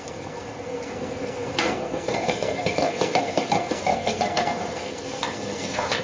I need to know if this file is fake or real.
fake